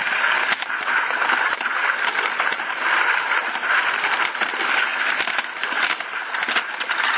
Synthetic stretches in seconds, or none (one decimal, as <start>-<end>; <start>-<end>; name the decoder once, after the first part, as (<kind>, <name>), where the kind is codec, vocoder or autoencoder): none